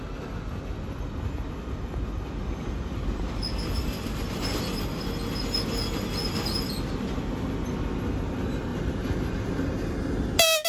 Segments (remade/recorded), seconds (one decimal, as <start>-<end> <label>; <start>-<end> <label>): 0.0-8.7 recorded; 8.7-9.9 remade; 9.9-10.7 recorded